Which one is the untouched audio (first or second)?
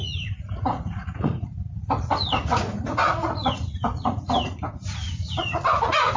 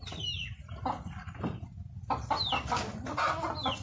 second